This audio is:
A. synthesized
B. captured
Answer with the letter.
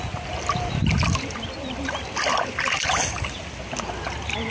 B